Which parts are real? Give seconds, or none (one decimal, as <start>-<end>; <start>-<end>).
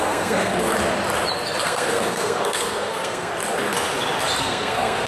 0.7-1.6; 3.3-4.4